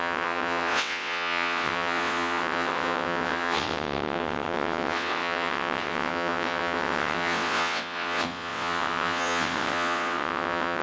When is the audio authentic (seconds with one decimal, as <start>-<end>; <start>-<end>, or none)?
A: none